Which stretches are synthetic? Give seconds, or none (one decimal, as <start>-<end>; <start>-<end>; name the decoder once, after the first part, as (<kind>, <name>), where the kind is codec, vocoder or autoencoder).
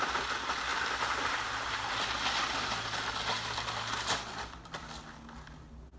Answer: 0.7-1.3 (vocoder, BigVGAN v2)